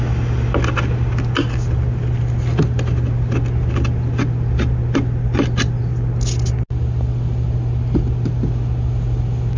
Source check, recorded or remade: recorded